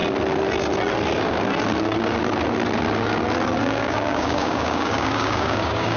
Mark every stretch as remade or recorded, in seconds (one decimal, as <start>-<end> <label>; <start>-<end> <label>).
0.0-3.6 recorded; 3.6-6.0 remade